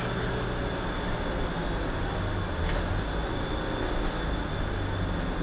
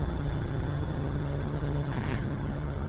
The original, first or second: first